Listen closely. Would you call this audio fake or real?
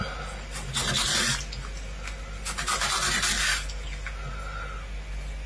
real